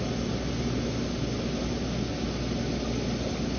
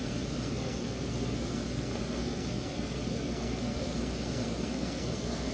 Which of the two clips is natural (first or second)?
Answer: first